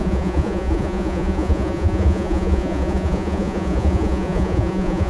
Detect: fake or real fake